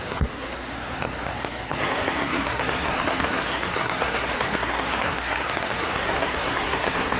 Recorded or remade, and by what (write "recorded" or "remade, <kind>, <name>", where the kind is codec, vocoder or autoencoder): remade, codec, SNAC